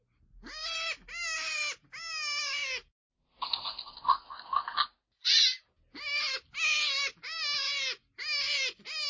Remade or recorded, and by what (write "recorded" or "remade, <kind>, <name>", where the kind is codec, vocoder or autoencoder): recorded